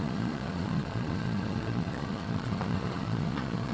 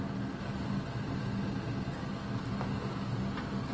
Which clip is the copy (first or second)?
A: first